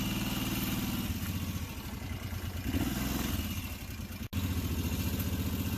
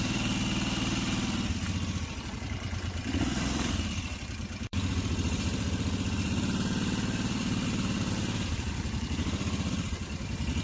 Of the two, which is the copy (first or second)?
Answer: second